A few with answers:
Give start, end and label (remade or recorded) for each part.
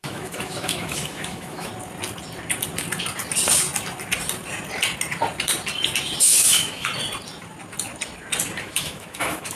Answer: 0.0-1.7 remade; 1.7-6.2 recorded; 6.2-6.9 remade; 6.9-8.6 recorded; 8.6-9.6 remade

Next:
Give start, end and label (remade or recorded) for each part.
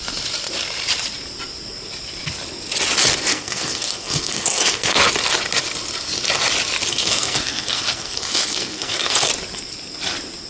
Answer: 0.0-3.3 recorded; 3.3-5.1 remade; 5.1-6.9 recorded; 6.9-9.3 remade; 9.3-10.5 recorded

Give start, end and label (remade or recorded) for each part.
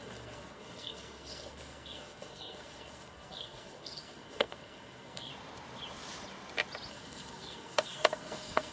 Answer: 0.0-5.3 remade; 5.3-6.9 recorded; 6.9-8.7 remade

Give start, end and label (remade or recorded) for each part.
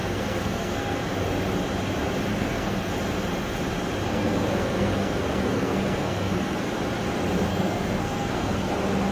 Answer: 0.0-1.0 remade; 1.0-2.3 recorded; 2.3-2.9 remade; 2.9-4.1 recorded; 4.1-6.7 remade; 6.7-7.5 recorded; 7.5-8.7 remade; 8.7-9.1 recorded